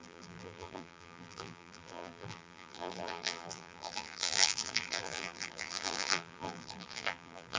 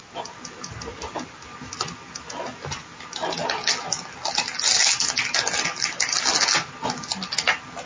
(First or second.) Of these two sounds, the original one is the second